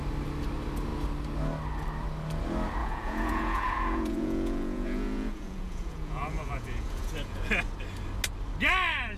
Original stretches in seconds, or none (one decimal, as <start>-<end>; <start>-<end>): 0.0-2.8; 7.5-9.2